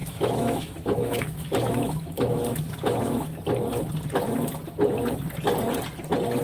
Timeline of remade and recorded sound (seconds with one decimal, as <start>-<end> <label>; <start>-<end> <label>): 0.0-3.4 remade; 3.4-6.4 recorded

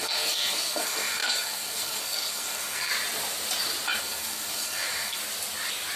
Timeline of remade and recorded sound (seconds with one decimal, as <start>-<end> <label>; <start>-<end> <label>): 0.0-2.9 remade; 2.9-4.0 recorded; 4.0-5.2 remade; 5.2-6.0 recorded

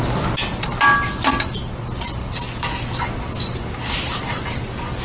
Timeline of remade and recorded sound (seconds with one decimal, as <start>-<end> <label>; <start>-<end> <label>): 0.0-5.0 recorded

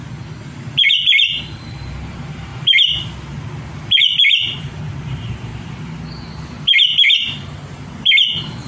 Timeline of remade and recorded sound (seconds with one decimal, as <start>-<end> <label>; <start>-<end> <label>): 0.0-1.4 recorded; 1.4-2.5 remade; 2.5-4.0 recorded; 4.0-5.5 remade; 5.5-6.3 recorded; 6.3-8.7 remade

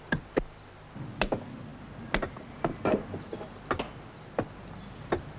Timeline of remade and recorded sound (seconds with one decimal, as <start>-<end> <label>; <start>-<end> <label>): 0.0-5.4 recorded

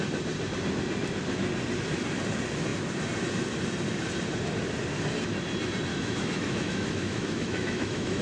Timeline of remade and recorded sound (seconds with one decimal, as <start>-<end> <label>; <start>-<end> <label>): 0.0-5.9 recorded; 5.9-8.2 remade

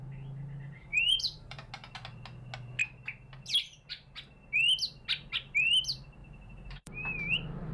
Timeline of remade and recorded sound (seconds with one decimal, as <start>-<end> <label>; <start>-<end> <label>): 0.0-0.9 recorded; 0.9-1.7 remade; 1.7-6.2 recorded; 6.2-7.7 remade